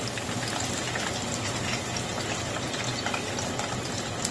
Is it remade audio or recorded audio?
recorded